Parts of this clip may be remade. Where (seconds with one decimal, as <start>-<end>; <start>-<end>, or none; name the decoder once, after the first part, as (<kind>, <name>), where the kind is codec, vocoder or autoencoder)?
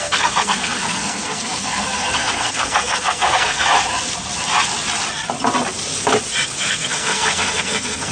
0.0-3.7 (codec, SNAC); 6.6-8.1